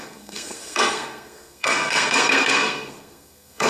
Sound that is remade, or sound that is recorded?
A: remade